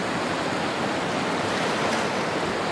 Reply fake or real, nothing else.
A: real